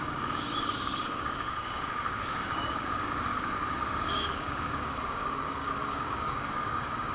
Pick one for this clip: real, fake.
fake